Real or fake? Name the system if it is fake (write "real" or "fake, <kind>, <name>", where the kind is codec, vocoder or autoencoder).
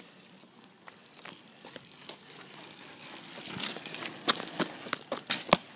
real